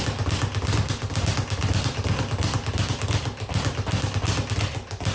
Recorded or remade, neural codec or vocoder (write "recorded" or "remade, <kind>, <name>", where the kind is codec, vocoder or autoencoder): recorded